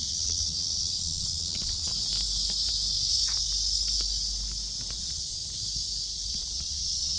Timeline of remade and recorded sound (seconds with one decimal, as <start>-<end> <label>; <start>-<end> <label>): 0.0-1.9 remade; 1.9-5.0 recorded; 5.0-5.4 remade; 5.4-6.3 recorded; 6.3-7.2 remade